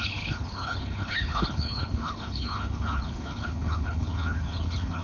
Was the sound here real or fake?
fake